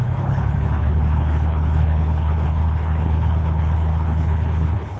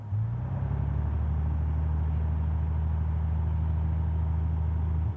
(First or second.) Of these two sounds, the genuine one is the second